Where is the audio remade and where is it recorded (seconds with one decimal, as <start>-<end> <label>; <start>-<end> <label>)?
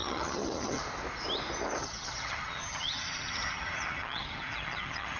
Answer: 0.0-0.8 remade; 0.8-1.8 recorded; 1.8-5.2 remade